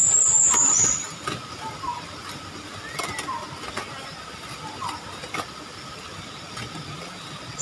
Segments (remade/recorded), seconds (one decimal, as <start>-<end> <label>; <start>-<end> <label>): 0.0-7.6 recorded